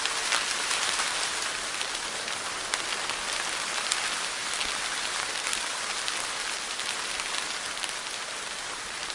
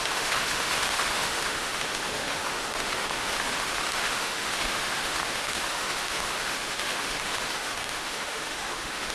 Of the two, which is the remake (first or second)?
second